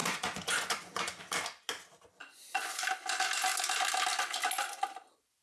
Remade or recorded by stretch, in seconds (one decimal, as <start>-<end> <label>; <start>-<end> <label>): 0.0-1.2 remade; 1.2-2.2 recorded; 2.2-2.8 remade; 2.8-5.4 recorded